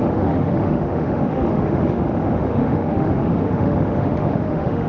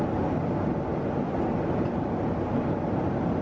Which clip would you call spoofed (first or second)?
first